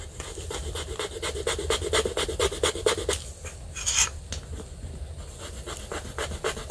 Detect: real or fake real